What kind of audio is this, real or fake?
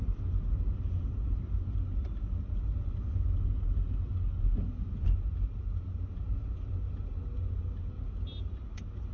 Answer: real